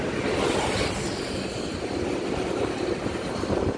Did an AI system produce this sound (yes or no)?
no